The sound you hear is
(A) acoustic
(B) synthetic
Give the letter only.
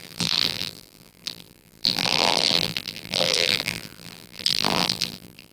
B